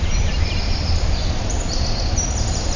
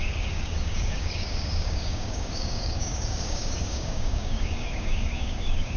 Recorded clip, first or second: first